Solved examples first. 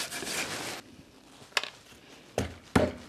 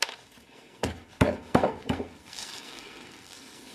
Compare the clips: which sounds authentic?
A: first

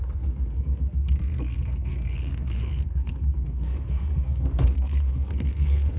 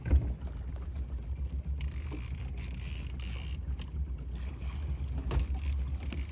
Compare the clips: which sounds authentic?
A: second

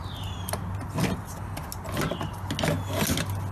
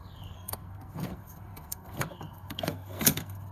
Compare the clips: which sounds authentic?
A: first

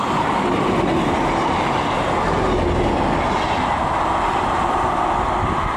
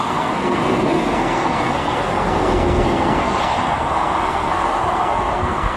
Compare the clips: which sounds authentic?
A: first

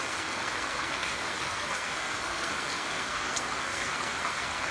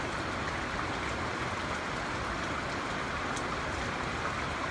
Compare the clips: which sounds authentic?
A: second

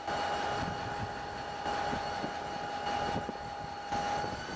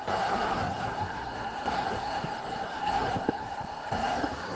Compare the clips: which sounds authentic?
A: first